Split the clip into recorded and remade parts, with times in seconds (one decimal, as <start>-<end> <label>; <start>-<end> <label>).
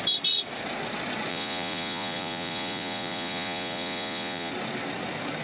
0.0-1.3 recorded; 1.3-4.5 remade; 4.5-5.4 recorded